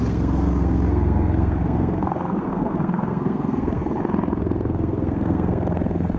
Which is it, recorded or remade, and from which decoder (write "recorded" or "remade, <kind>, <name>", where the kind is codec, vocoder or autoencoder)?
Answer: remade, codec, SNAC